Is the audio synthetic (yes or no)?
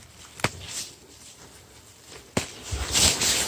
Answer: no